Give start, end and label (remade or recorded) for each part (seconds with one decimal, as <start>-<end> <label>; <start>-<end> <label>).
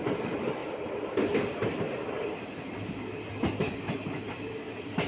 0.0-5.1 remade